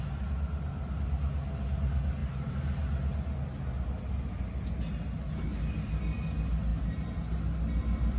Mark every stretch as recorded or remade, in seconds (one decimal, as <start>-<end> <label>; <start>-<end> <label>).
0.0-8.2 recorded